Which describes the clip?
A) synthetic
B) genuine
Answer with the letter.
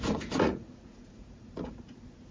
A